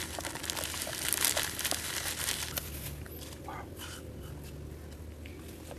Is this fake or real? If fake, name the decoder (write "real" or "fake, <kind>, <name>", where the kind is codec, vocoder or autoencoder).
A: real